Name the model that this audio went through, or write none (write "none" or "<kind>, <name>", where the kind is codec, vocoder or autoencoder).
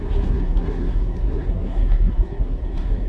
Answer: codec, SNAC